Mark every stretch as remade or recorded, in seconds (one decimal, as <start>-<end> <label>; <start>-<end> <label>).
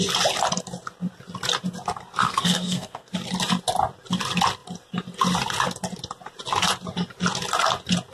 0.0-2.2 recorded; 2.2-3.1 remade; 3.1-8.1 recorded